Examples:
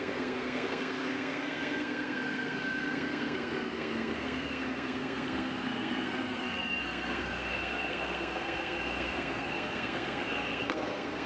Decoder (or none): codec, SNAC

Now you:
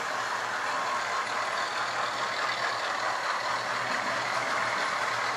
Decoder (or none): none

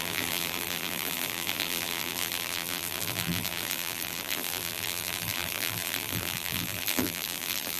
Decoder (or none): vocoder, BigVGAN v2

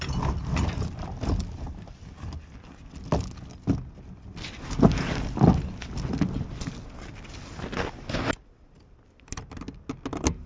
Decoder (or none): none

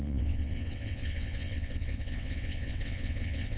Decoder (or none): vocoder, WaveNeXt